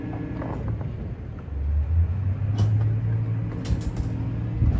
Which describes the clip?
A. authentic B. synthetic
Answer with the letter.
A